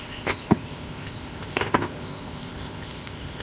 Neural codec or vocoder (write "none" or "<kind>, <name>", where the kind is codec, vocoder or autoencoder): codec, ZipCodec